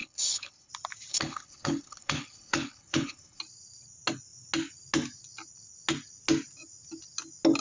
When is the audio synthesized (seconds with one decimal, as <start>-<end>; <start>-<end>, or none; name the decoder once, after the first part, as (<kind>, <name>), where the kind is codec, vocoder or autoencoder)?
0.0-0.7 (codec, HILCodec); 1.1-3.4